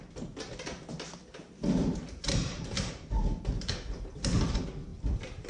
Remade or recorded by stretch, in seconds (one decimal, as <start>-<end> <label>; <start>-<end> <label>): 0.0-1.3 recorded; 1.3-4.1 remade; 4.1-4.9 recorded; 4.9-5.5 remade